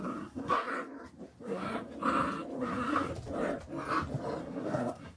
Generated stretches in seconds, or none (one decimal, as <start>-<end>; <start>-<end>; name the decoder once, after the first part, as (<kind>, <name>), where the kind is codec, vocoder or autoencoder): 0.0-0.7 (codec, SNAC); 1.4-1.9; 2.6-3.1; 4.4-5.2